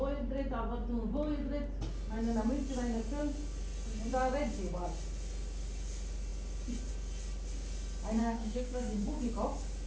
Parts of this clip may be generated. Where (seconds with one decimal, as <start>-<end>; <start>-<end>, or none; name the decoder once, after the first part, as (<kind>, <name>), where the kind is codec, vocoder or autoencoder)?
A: 8.2-9.2 (codec, SNAC)